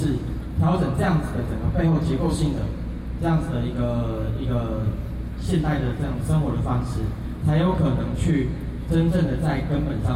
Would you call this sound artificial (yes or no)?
no